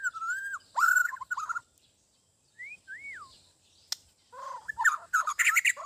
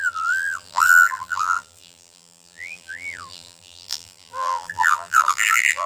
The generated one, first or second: second